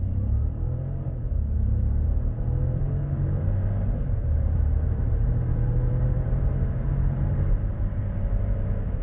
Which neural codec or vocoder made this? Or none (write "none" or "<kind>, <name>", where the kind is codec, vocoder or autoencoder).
vocoder, BigVGAN v2